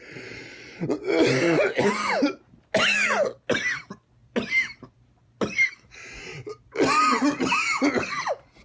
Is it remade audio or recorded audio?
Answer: recorded